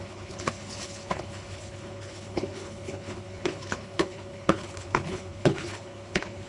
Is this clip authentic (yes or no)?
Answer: no